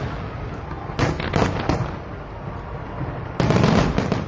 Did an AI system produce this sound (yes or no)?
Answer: no